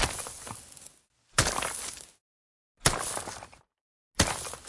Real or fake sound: real